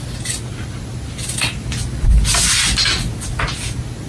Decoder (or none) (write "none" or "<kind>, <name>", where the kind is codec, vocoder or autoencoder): none